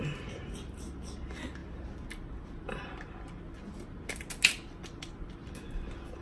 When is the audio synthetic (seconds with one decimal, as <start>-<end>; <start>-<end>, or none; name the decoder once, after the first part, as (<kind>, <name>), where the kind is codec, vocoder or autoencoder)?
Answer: none